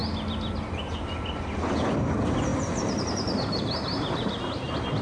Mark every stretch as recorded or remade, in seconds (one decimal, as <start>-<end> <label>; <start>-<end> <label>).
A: 0.0-2.5 recorded; 2.5-4.4 remade; 4.4-5.0 recorded